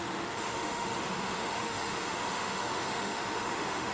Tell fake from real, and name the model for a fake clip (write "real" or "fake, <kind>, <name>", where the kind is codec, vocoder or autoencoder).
fake, autoencoder, DAC-VAE